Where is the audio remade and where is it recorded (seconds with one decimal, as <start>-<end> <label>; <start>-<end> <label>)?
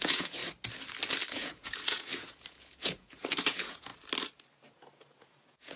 0.0-0.4 remade; 0.4-1.3 recorded; 1.3-3.9 remade; 3.9-4.7 recorded; 4.7-5.8 remade